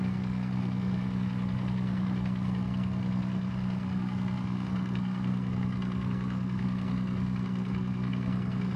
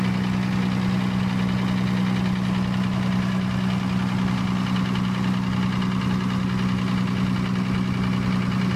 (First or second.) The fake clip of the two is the first